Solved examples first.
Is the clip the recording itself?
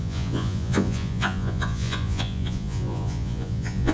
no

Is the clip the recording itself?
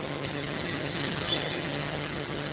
no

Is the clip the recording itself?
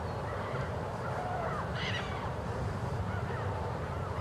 no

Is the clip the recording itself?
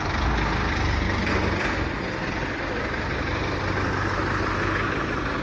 yes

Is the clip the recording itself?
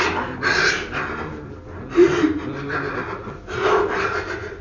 yes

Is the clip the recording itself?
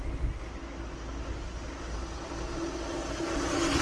yes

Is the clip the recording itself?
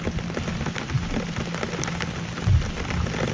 yes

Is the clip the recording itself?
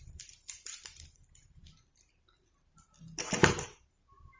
no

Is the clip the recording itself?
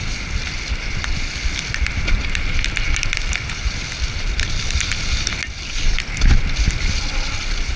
yes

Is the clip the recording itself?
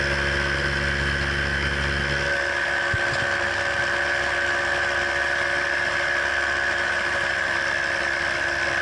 yes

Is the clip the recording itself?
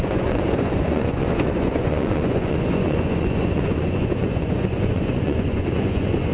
no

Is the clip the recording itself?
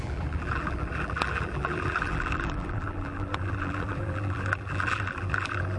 no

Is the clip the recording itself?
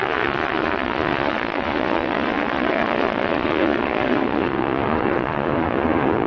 no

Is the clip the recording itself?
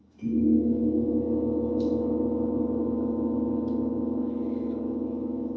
no